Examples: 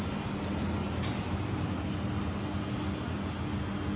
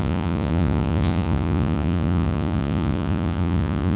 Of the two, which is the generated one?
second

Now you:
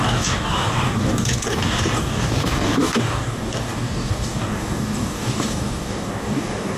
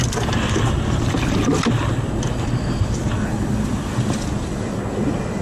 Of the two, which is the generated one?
first